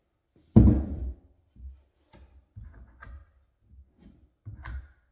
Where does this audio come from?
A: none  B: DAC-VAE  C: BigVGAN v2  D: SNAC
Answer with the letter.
A